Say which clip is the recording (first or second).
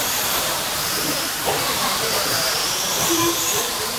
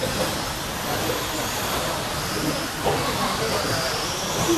second